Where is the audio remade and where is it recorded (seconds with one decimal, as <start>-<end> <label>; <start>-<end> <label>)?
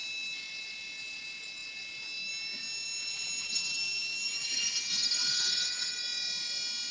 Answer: 0.0-6.9 recorded